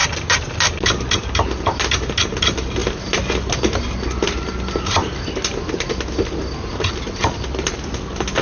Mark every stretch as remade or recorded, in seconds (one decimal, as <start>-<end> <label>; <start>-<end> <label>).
0.0-8.4 recorded